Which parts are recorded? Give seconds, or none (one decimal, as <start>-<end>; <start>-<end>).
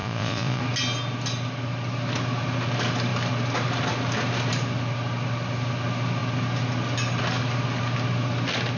0.6-8.8